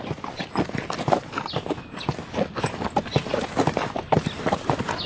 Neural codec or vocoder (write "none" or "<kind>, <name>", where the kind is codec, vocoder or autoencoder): none